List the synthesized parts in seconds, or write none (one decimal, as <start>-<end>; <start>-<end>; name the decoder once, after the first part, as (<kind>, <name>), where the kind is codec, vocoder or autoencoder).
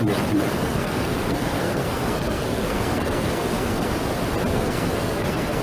0.5-3.9 (codec, SNAC); 4.5-5.6